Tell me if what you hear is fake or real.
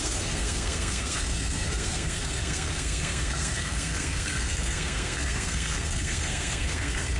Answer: fake